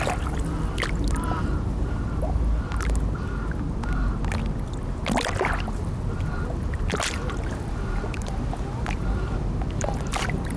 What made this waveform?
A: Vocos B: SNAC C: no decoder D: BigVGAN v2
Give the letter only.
C